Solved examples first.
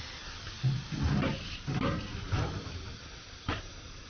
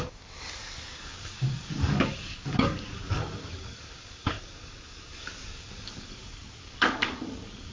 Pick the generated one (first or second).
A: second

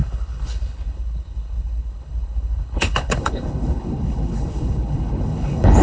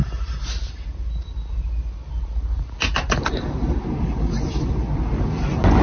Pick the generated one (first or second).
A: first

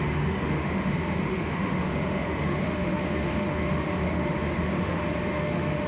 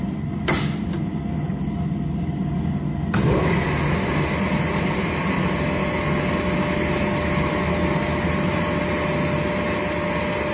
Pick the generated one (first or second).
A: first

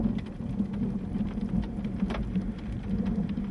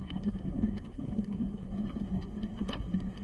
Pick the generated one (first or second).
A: second